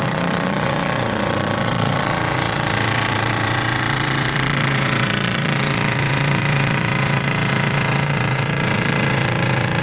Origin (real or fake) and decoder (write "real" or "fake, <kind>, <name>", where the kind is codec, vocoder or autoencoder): fake, vocoder, WaveNeXt